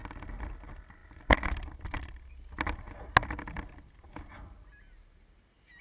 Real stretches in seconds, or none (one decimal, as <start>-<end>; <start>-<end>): 0.0-5.8